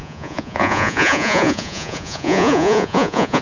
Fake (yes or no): yes